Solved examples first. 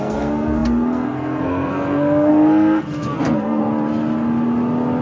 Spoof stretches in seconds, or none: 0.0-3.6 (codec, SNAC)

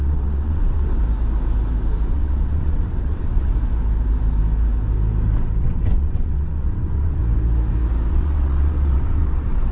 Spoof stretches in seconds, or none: 0.0-0.9 (vocoder, WaveNeXt); 2.1-3.5; 5.6-7.2; 8.1-9.7

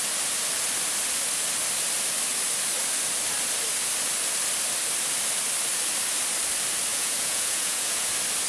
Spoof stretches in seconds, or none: 6.9-8.1 (vocoder, Vocos)

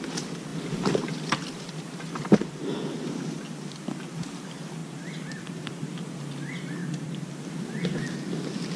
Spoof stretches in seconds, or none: 0.5-2.5 (vocoder, BigVGAN v2); 4.8-6.2; 6.8-7.4

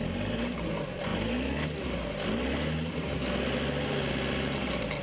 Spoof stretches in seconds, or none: none

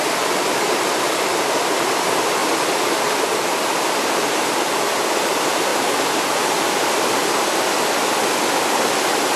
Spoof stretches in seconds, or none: 2.4-3.2 (vocoder, BigVGAN v2)